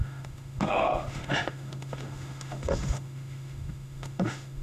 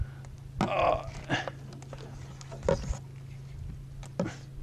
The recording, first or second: second